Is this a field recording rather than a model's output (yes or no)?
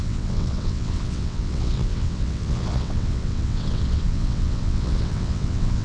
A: no